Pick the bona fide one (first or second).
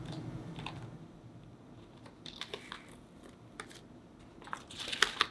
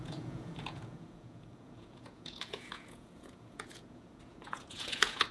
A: first